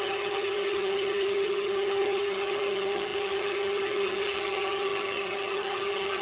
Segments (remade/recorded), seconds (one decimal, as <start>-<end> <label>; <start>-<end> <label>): 0.0-6.2 remade